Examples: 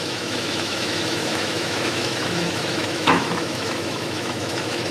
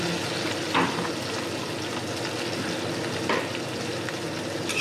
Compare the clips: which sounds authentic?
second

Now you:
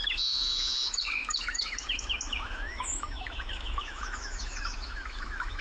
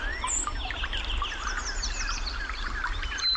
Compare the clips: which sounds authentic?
second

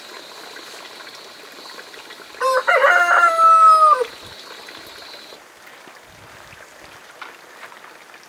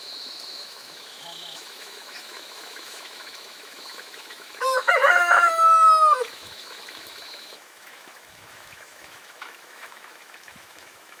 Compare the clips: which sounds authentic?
first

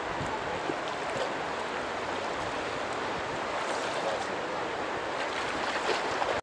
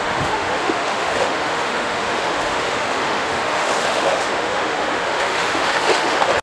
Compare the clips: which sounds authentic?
first